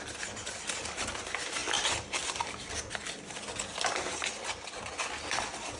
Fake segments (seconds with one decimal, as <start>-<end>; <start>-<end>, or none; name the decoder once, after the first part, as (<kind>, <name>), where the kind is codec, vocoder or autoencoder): none